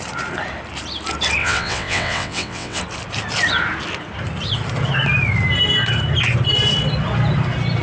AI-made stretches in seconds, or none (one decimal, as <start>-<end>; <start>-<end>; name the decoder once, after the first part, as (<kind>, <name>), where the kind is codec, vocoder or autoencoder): 1.4-2.8 (vocoder, WaveNeXt)